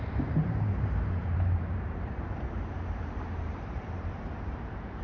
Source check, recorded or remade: remade